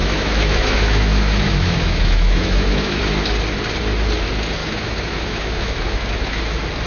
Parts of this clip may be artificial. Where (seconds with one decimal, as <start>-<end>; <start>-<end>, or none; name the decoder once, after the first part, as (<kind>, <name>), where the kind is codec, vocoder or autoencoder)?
0.0-3.0 (autoencoder, DAC-VAE); 4.6-6.4